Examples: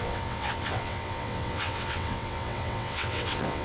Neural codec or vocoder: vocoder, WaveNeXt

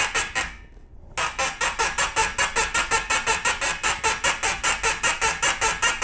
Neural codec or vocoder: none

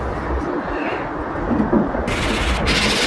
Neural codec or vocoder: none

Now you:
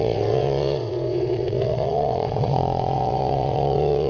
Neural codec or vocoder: vocoder, WaveNeXt